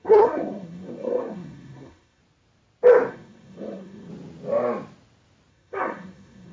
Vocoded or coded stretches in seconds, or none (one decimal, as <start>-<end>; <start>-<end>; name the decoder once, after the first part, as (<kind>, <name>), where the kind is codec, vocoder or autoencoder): 0.0-2.2 (codec, SNAC); 3.1-4.1; 5.5-6.5

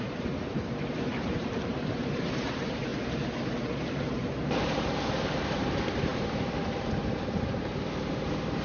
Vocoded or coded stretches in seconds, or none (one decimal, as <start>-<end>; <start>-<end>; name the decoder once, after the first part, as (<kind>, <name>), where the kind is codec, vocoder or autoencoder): 0.0-2.9 (vocoder, BigVGAN v2); 3.9-8.6

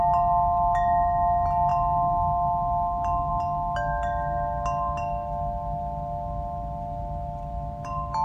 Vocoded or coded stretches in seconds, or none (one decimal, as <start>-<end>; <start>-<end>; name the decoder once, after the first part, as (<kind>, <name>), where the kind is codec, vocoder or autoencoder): none